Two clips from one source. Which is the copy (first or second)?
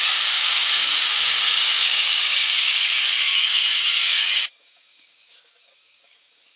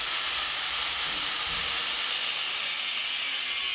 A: first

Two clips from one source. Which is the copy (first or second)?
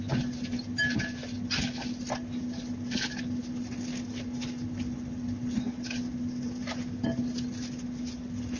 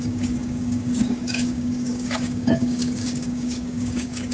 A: second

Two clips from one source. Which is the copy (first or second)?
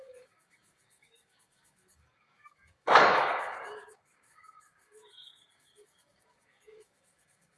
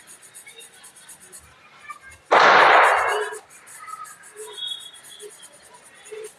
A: first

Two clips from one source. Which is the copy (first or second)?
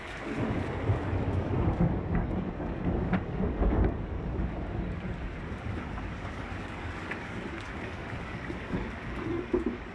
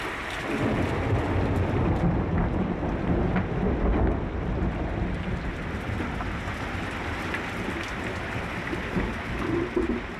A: first